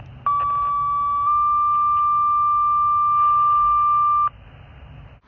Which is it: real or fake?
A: real